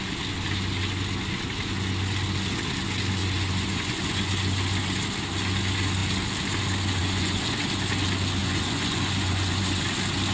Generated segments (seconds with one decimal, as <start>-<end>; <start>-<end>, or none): 3.2-4.3; 7.0-7.6; 8.4-9.8